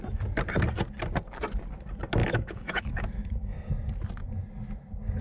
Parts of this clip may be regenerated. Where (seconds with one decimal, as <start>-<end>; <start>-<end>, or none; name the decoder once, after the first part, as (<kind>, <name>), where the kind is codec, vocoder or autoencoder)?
2.2-3.7 (autoencoder, DAC-VAE)